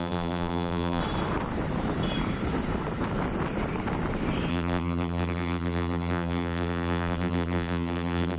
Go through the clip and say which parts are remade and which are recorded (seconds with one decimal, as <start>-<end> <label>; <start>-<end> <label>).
0.0-1.0 remade; 1.0-4.5 recorded; 4.5-8.4 remade